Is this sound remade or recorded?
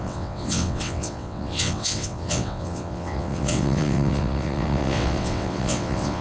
remade